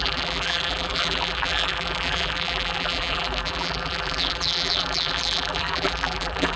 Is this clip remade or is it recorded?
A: remade